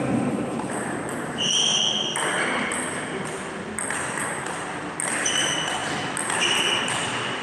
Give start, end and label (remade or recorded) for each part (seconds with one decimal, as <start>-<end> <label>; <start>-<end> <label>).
0.0-1.7 remade; 1.7-3.9 recorded; 3.9-5.8 remade; 5.8-6.8 recorded; 6.8-7.4 remade